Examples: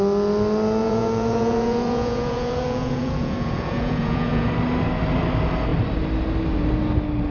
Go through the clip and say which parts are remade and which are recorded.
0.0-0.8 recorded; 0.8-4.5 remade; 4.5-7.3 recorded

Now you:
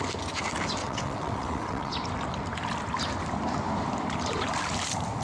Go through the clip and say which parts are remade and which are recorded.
0.0-0.8 recorded; 0.8-1.9 remade; 1.9-5.2 recorded

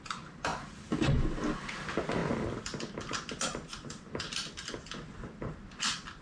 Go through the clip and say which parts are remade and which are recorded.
0.0-6.2 recorded

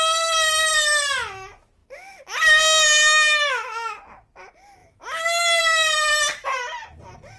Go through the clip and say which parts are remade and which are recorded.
0.0-4.8 recorded; 4.8-5.6 remade; 5.6-7.4 recorded

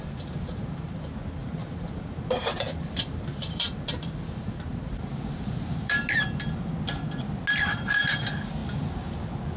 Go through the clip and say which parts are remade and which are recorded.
0.0-0.4 recorded; 0.4-0.9 remade; 0.9-1.4 recorded; 1.4-6.0 remade; 6.0-9.6 recorded

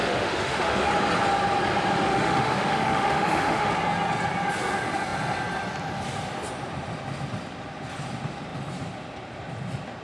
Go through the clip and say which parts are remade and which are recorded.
0.0-0.9 remade; 0.9-2.1 recorded; 2.1-3.7 remade; 3.7-10.0 recorded